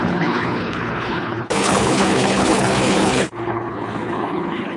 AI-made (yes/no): yes